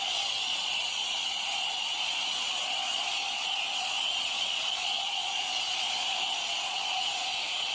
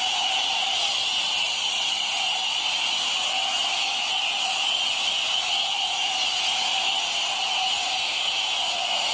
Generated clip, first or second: first